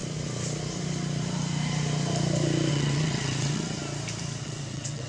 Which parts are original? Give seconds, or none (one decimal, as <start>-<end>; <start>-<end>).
0.0-2.7; 3.8-4.4